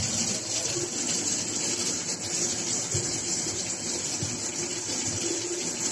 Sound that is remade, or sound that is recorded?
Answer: recorded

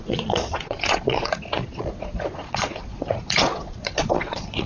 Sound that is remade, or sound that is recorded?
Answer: remade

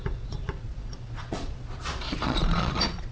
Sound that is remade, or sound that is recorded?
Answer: remade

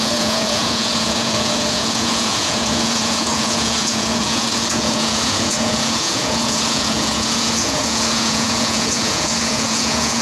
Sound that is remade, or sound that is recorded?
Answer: remade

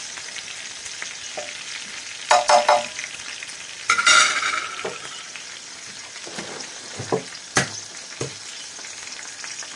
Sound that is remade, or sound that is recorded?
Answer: recorded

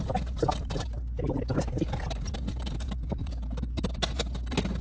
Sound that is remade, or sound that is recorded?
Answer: recorded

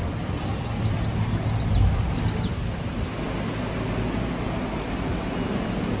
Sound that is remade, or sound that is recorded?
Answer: recorded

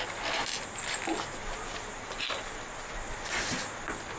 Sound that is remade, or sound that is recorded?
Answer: recorded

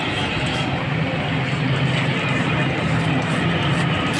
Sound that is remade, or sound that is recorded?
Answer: recorded